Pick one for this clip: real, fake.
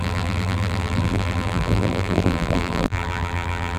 fake